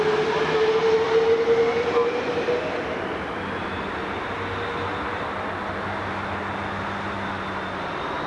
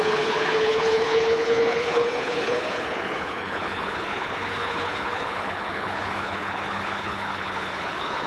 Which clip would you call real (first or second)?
first